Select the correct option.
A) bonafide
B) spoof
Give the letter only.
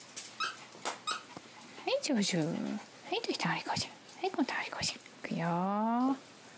A